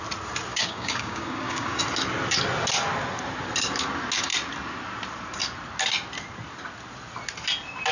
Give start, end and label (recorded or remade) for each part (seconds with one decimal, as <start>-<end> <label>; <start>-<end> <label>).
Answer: 0.0-0.5 recorded; 0.5-1.8 remade; 1.8-7.9 recorded